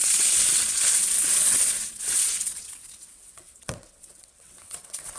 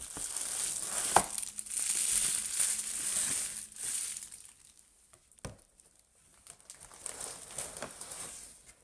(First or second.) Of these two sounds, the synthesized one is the first